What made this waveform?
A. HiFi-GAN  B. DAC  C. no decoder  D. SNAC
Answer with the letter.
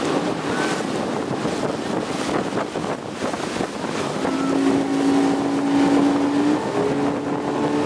C